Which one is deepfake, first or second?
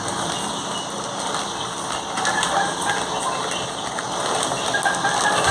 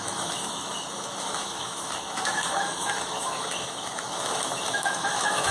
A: second